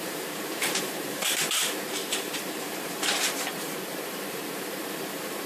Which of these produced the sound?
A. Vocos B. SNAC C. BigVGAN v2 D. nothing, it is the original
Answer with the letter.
C